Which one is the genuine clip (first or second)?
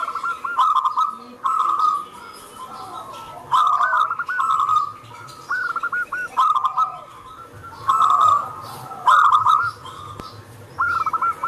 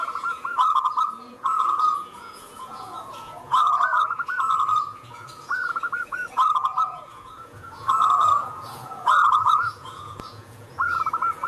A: first